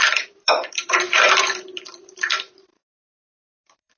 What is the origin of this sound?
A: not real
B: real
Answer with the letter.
A